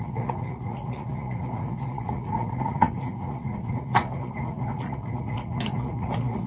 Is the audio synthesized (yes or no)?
yes